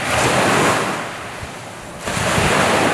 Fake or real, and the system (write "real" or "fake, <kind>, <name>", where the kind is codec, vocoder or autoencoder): real